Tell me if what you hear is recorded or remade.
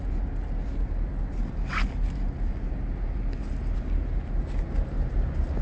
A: recorded